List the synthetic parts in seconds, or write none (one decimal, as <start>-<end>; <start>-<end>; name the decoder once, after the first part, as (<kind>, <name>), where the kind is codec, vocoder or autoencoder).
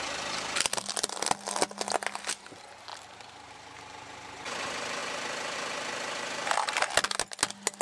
none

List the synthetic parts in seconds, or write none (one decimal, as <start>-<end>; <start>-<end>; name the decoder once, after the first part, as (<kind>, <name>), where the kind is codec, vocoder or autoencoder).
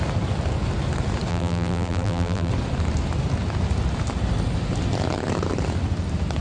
1.3-2.5 (vocoder, BigVGAN v2)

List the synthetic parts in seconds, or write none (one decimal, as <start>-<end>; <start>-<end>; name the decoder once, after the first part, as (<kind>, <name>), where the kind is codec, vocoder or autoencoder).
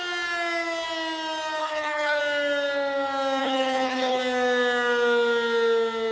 1.6-2.2 (codec, HILCodec); 3.4-4.2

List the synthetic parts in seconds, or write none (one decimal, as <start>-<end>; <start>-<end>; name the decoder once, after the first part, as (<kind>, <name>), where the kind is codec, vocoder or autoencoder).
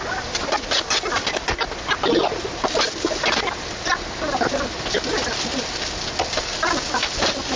none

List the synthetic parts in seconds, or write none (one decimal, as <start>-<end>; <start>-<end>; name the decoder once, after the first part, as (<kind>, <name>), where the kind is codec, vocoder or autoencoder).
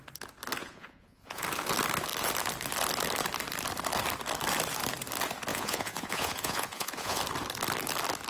0.6-1.4 (vocoder, Vocos); 5.5-7.2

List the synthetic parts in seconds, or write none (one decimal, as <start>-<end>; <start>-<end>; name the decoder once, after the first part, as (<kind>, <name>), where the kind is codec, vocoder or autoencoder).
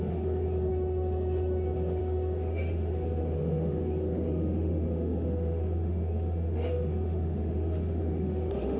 0.0-8.8 (autoencoder, DAC-VAE)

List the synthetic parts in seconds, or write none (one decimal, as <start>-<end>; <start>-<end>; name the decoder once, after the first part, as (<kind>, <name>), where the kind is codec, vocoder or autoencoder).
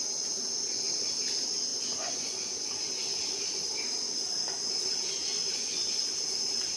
1.7-2.9 (vocoder, Vocos); 5.3-6.2